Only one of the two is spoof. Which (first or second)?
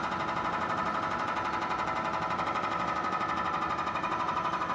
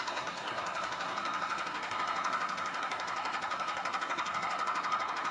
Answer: second